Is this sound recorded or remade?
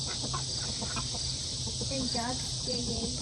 remade